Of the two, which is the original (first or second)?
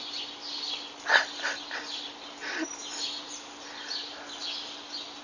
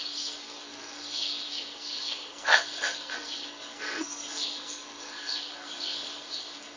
first